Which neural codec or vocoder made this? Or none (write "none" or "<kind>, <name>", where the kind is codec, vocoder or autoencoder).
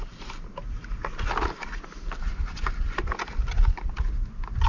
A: none